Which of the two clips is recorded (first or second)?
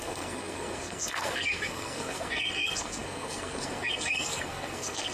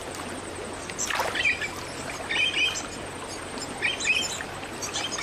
second